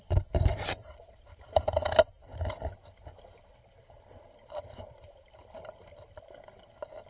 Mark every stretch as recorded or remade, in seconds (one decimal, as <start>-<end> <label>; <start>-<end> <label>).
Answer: 0.0-0.5 recorded; 0.5-1.8 remade; 1.8-7.1 recorded